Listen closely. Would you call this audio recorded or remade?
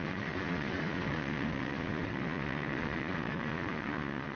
remade